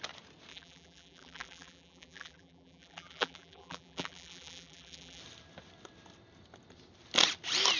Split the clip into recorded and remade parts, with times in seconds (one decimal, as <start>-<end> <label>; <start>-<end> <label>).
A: 0.0-0.5 recorded; 0.5-5.2 remade; 5.2-7.8 recorded